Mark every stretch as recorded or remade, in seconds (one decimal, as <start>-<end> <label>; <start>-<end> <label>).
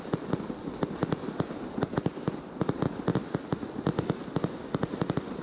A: 0.0-5.4 recorded